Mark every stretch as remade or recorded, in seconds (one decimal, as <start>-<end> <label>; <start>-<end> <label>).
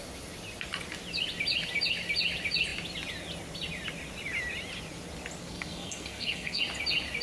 0.0-5.4 recorded; 5.4-6.6 remade; 6.6-7.2 recorded